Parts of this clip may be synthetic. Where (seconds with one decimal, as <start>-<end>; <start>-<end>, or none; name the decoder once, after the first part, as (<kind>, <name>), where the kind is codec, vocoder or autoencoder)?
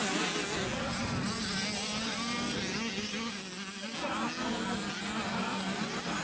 none